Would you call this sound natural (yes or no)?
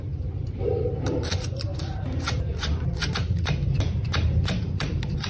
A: no